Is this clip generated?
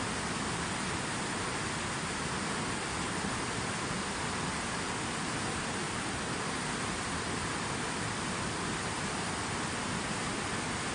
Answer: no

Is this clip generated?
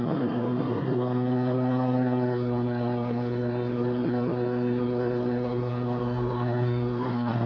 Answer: yes